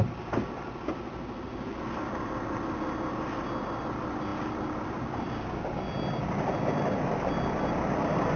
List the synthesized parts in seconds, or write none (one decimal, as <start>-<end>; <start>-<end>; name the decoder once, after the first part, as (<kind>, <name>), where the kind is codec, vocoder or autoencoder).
none